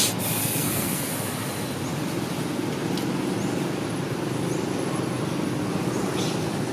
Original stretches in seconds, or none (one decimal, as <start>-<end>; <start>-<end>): 0.0-0.4; 1.1-6.7